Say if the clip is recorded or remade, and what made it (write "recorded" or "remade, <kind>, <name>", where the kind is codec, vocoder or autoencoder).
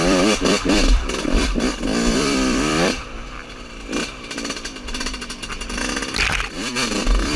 remade, vocoder, BigVGAN v2